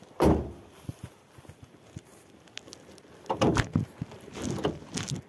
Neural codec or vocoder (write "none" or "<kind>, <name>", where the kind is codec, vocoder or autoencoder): none